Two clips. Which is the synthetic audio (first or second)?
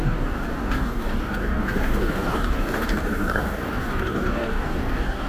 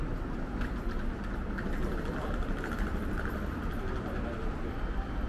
first